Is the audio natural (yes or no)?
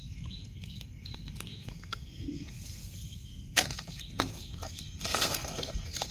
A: no